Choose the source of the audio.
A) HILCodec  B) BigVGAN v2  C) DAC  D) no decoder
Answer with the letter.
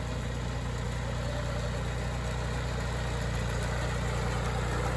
D